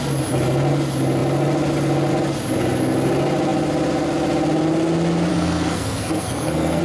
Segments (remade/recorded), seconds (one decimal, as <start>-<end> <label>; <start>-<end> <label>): 0.0-5.3 recorded; 5.3-6.8 remade